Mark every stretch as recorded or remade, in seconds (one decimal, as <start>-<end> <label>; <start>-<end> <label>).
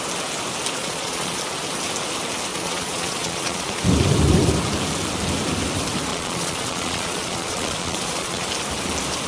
0.0-0.8 recorded; 0.8-1.4 remade; 1.4-2.5 recorded; 2.5-3.8 remade; 3.8-6.1 recorded; 6.1-8.5 remade; 8.5-9.3 recorded